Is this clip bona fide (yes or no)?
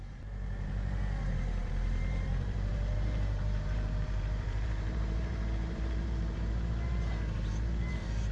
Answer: no